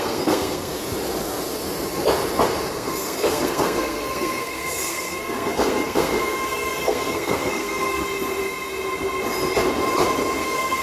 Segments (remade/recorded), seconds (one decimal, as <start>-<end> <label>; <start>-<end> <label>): 0.0-0.7 remade; 0.7-2.7 recorded; 2.7-8.0 remade; 8.0-10.4 recorded; 10.4-10.8 remade